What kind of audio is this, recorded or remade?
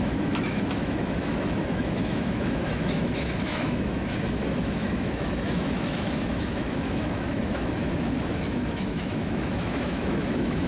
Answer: remade